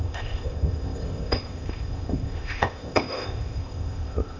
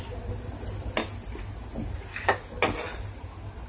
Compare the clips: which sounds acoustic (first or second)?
second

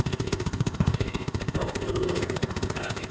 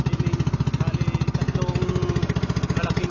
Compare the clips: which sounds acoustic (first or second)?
second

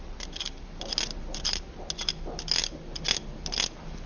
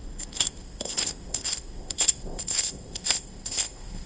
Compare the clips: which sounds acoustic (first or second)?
first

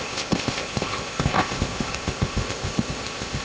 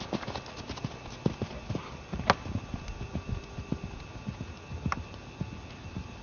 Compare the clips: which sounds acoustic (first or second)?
second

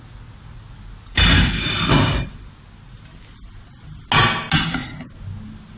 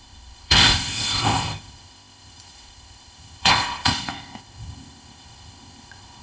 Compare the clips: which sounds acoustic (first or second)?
first